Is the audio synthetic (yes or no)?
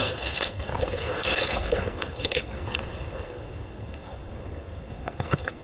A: yes